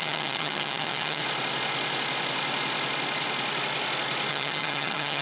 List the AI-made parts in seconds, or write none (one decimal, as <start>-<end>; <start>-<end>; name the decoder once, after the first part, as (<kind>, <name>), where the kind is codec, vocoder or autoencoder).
0.0-1.2 (vocoder, HiFi-GAN); 4.3-5.2